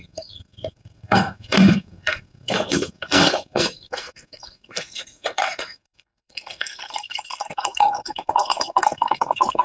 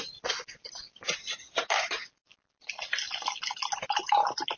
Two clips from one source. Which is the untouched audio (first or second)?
second